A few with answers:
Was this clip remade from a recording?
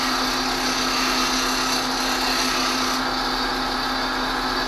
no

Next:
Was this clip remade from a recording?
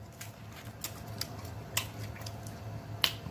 no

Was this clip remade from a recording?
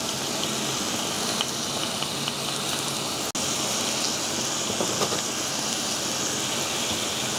no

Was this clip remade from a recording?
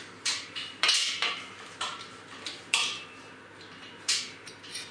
yes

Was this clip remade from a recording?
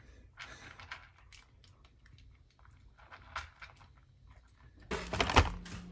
no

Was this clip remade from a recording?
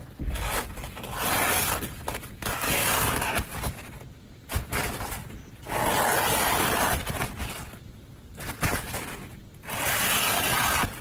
no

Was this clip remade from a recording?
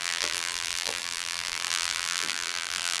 yes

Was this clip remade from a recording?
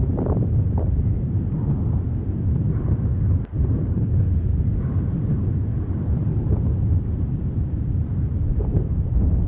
yes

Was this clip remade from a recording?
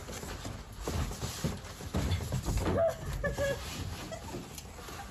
no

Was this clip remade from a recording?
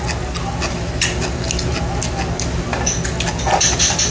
no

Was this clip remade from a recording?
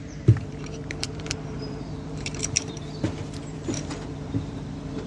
yes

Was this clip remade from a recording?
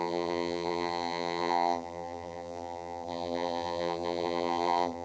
yes